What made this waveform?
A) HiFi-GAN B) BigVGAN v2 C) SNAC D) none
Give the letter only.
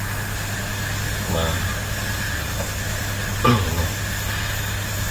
D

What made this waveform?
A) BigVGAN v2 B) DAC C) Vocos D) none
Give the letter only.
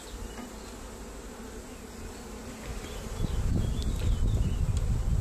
D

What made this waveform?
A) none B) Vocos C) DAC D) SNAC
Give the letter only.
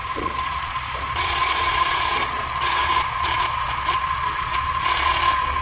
B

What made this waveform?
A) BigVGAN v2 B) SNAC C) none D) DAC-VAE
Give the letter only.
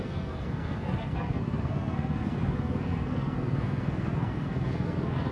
B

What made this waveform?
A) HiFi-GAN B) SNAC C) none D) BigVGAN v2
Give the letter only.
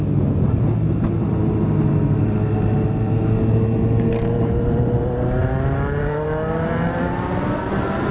C